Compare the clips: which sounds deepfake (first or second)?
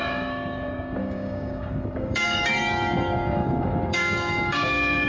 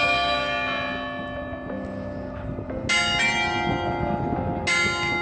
first